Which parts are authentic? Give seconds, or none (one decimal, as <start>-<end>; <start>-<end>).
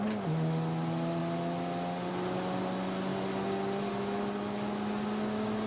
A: 0.0-5.7